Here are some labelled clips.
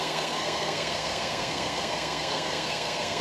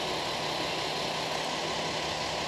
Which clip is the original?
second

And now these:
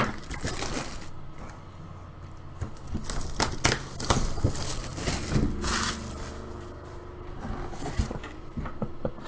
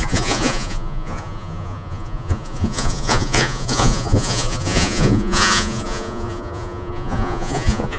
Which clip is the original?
first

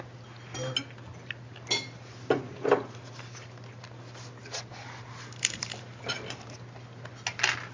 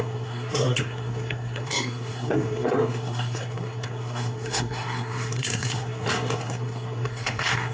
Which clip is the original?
first